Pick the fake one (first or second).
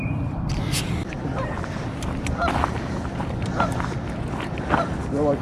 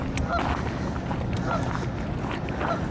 first